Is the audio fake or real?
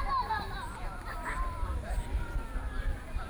fake